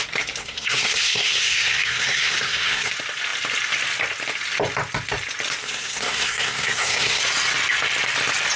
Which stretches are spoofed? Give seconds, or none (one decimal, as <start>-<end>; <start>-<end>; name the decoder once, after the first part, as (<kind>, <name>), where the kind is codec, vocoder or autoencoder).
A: 0.4-2.9 (codec, SNAC); 5.6-7.2